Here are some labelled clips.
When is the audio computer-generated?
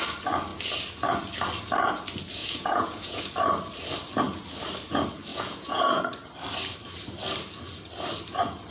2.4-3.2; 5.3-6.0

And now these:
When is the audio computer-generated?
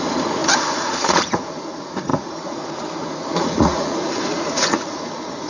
0.0-5.5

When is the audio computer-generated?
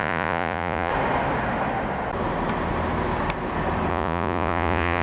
0.0-0.9; 3.9-5.0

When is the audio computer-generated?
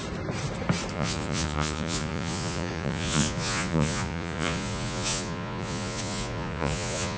0.9-7.2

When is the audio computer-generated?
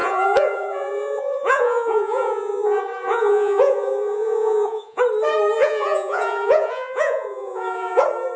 0.0-5.0; 5.6-8.0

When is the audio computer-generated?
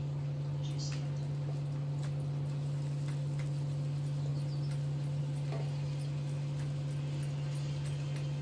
none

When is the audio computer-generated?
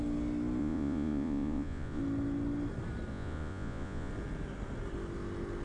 0.6-2.0; 3.1-4.1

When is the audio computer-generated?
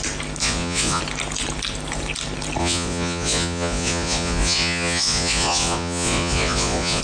0.4-1.0; 2.6-7.0